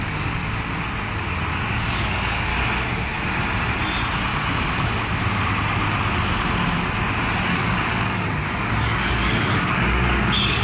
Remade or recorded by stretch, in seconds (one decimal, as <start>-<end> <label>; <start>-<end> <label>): 0.0-0.4 remade; 0.4-1.7 recorded; 1.7-2.5 remade; 2.5-7.4 recorded; 7.4-10.6 remade